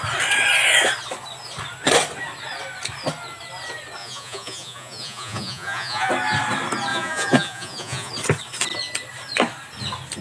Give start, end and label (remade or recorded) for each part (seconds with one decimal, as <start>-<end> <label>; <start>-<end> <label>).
0.0-4.0 recorded; 4.0-6.1 remade; 6.1-6.9 recorded; 6.9-8.1 remade; 8.1-10.2 recorded